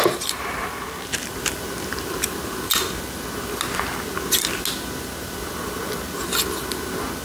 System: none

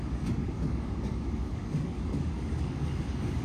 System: codec, DAC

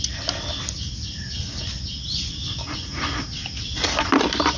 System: none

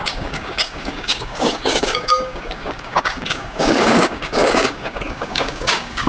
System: codec, DAC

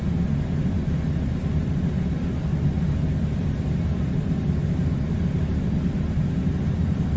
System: none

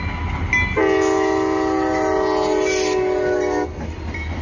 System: none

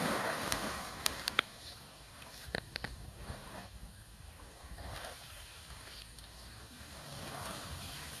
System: codec, DAC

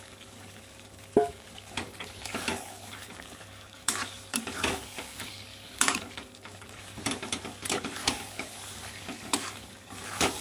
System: codec, DAC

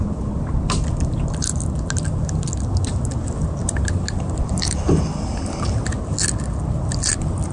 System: none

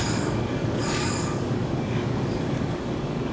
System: codec, DAC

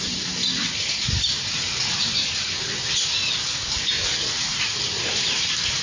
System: none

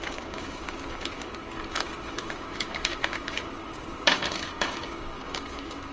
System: codec, DAC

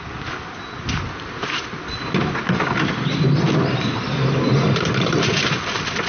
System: none